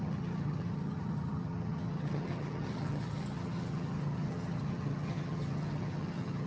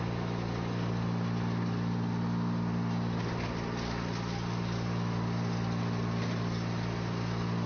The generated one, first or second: first